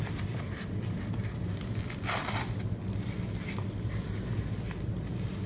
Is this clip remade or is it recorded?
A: recorded